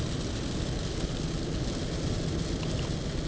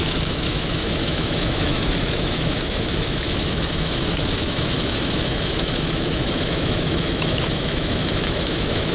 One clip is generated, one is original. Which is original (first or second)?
first